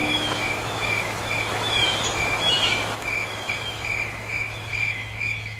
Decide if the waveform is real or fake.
fake